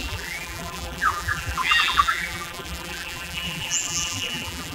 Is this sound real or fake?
fake